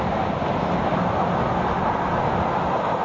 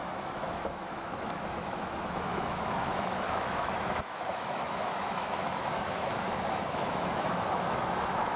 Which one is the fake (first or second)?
second